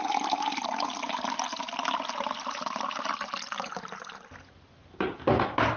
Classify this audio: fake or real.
real